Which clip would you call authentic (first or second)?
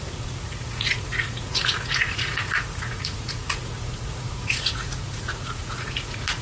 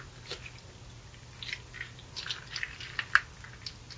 second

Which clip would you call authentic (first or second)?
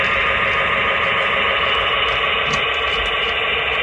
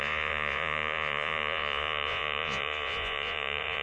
first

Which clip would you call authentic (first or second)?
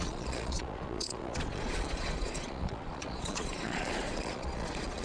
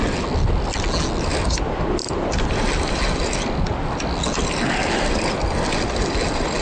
second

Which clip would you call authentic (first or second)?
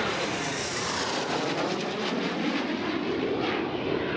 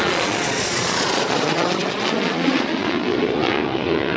first